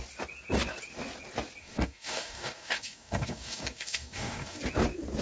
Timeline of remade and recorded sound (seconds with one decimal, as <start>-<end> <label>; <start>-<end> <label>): 0.0-1.6 recorded; 1.6-4.6 remade; 4.6-5.2 recorded